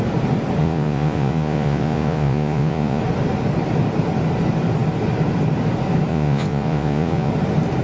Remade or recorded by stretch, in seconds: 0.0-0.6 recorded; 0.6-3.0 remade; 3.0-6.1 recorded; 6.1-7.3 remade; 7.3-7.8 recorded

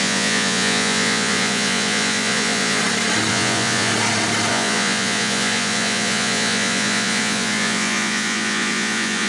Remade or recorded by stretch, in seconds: 0.0-2.8 remade; 2.8-3.3 recorded; 3.3-3.9 remade; 3.9-4.5 recorded; 4.5-9.3 remade

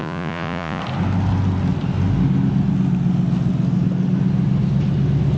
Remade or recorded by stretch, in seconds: 0.0-0.8 remade; 0.8-5.4 recorded

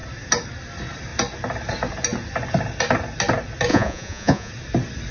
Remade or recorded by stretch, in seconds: 0.0-3.7 recorded; 3.7-4.5 remade; 4.5-5.1 recorded

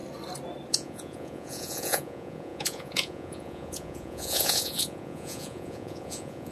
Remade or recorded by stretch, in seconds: 0.0-0.7 recorded; 0.7-6.5 remade

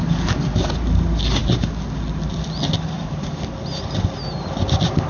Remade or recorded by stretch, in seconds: 0.0-5.1 recorded

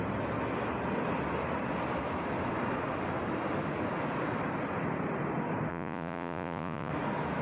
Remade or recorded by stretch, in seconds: 0.0-5.7 recorded; 5.7-6.9 remade; 6.9-7.4 recorded

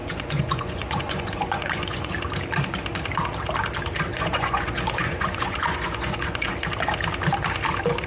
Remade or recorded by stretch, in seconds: 0.0-2.1 remade; 2.1-4.1 recorded; 4.1-6.5 remade; 6.5-8.1 recorded